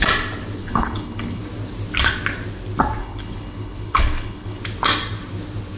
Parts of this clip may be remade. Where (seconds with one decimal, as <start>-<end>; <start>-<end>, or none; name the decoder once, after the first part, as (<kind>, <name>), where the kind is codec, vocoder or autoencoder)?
0.6-1.4 (codec, HILCodec); 3.0-4.6